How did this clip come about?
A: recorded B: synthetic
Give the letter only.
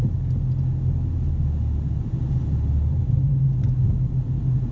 A